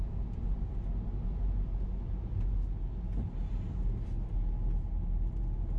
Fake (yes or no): no